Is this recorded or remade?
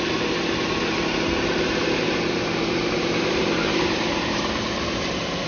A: remade